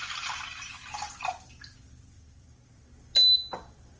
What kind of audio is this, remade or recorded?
recorded